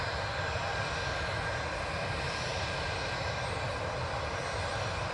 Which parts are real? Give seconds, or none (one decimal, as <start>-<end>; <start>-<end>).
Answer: 0.0-5.1